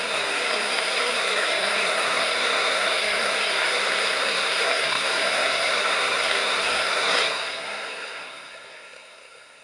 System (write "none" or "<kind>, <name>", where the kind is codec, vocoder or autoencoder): codec, SNAC